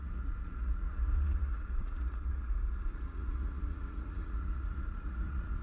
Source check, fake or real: fake